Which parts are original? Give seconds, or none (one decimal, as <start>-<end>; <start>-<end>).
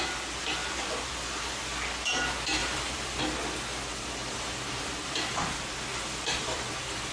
0.0-2.6; 3.2-3.7; 5.4-7.1